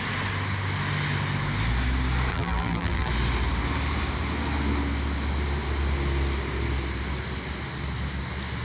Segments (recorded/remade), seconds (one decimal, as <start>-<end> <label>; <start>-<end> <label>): 0.0-2.3 recorded; 2.3-3.1 remade; 3.1-8.6 recorded